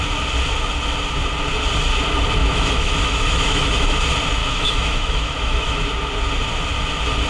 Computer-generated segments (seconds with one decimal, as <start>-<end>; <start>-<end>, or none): 2.4-4.0; 4.4-5.8